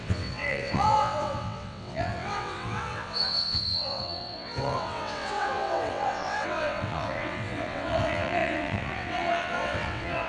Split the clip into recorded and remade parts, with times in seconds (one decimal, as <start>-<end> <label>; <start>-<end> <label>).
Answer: 0.0-10.3 remade